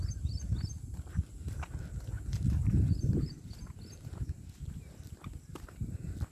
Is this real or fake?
real